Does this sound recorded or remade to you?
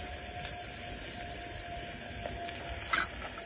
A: recorded